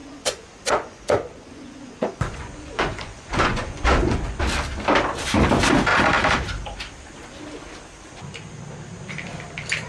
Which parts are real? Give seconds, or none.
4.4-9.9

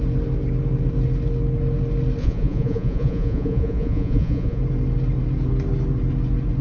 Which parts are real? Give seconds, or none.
0.0-2.2; 4.6-6.6

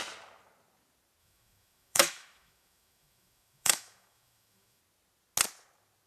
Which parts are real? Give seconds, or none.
0.0-1.2; 4.8-6.1

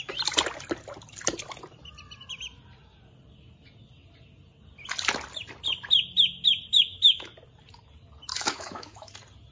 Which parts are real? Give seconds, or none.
0.0-6.7; 7.3-8.3; 9.1-9.5

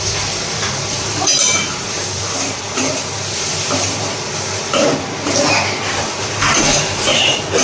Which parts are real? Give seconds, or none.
4.9-6.0

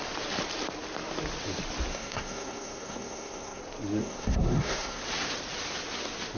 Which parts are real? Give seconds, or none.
0.0-1.9; 3.6-4.0; 5.0-6.4